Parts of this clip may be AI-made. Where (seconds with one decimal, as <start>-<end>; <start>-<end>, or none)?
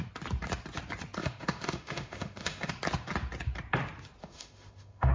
1.2-2.7; 4.2-5.1